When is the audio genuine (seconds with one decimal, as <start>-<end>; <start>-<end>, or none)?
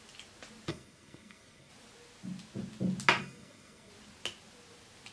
0.0-0.7; 1.7-3.2; 3.9-5.1